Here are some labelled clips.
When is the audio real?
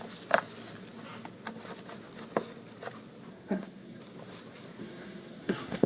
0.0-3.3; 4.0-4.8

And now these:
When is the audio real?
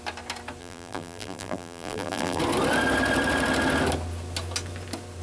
0.0-0.6; 2.4-5.2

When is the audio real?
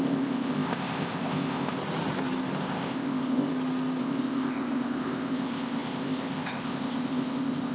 1.8-2.6; 3.5-4.0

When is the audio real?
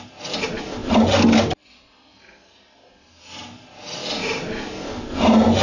0.0-5.6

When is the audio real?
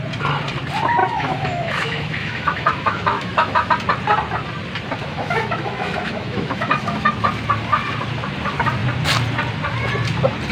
0.0-1.0; 3.7-5.0; 7.1-10.5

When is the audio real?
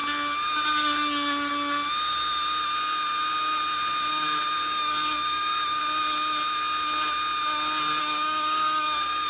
0.0-4.1; 5.8-8.0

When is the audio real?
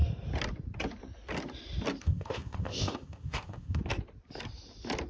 0.0-2.0; 3.8-5.1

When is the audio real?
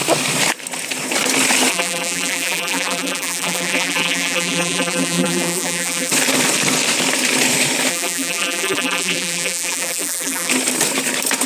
0.0-1.7; 6.1-7.9; 10.5-11.5